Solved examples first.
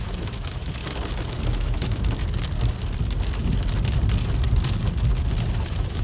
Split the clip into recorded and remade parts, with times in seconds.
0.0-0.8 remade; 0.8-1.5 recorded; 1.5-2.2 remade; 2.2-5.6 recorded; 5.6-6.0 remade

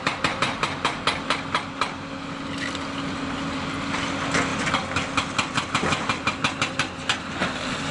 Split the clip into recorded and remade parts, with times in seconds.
0.0-7.9 recorded

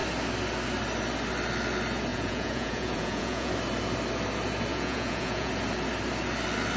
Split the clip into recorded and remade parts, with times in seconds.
0.0-2.1 recorded; 2.1-3.5 remade; 3.5-4.7 recorded; 4.7-5.5 remade; 5.5-6.8 recorded